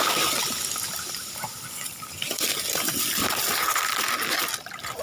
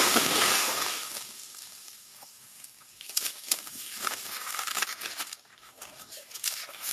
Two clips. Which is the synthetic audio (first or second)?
second